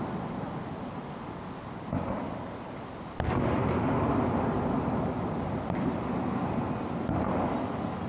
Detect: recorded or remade recorded